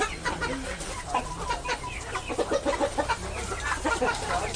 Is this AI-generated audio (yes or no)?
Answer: no